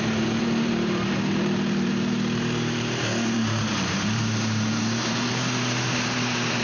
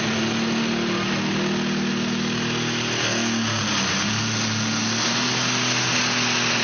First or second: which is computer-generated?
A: first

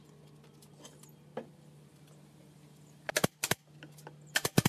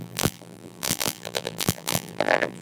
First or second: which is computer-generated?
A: second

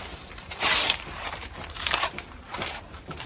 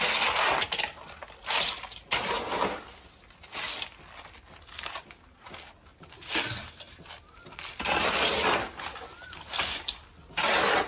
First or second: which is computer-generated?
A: first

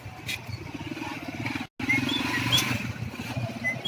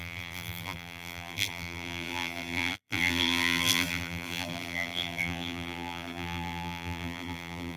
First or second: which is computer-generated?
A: second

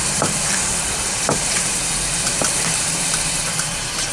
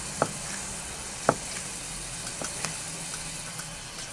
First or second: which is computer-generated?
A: first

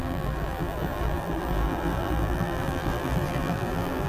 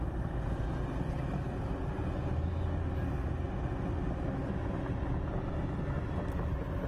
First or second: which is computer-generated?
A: first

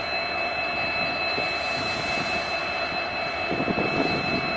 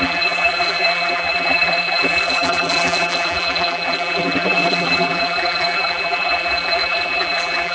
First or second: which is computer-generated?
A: second